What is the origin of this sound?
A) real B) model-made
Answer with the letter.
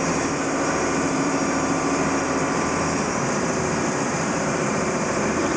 B